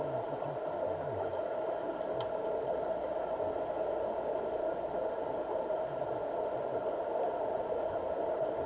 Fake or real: real